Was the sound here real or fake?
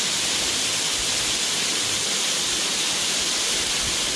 real